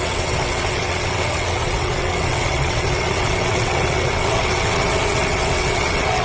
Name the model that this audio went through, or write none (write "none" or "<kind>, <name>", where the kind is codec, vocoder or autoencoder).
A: vocoder, WaveNeXt